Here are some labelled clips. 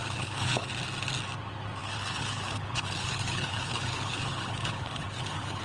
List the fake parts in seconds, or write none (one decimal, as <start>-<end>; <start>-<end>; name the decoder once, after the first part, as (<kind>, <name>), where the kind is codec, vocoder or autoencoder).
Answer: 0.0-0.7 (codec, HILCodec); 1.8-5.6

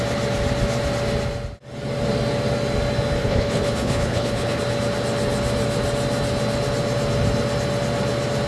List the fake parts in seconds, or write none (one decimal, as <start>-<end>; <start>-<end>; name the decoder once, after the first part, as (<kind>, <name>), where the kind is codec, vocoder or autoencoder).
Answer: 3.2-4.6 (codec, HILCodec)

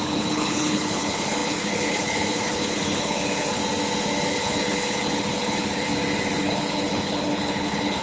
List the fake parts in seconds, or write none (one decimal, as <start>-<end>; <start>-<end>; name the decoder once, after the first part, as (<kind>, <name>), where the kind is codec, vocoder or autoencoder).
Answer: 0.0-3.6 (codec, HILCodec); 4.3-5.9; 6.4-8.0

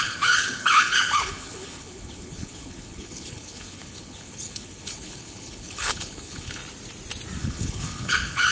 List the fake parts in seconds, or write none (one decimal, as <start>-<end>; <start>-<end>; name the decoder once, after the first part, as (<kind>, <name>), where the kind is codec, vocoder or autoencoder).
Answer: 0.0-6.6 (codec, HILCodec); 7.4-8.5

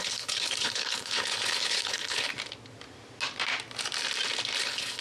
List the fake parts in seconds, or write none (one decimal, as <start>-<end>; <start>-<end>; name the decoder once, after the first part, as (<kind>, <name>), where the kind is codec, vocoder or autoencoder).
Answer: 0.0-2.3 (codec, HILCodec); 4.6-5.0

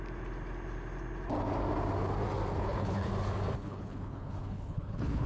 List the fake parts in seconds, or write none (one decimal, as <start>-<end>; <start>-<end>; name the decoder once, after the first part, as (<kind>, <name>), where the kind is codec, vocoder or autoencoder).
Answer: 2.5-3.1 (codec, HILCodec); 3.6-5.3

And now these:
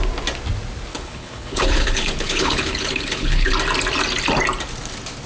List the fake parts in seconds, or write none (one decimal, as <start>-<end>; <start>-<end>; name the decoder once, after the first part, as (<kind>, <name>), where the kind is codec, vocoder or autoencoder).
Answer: 0.9-3.5 (codec, HILCodec)

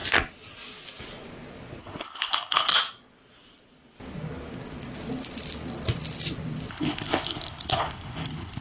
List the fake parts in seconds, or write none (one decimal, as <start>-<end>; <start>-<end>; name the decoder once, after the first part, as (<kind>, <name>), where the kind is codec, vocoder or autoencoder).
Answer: 1.8-2.7 (codec, HILCodec); 6.7-8.6